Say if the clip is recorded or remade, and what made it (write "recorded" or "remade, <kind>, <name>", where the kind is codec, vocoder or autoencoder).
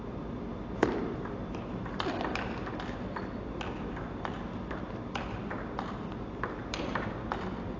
recorded